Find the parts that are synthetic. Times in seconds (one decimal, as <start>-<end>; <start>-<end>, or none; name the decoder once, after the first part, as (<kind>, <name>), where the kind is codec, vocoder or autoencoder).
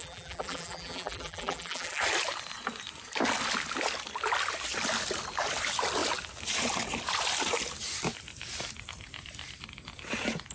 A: 0.0-2.0 (vocoder, BigVGAN v2)